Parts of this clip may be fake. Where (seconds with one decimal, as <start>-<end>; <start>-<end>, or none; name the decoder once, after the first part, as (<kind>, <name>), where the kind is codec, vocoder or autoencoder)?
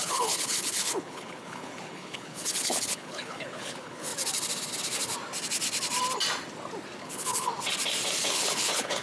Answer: 0.0-4.1 (codec, HILCodec); 7.0-7.5; 8.3-9.0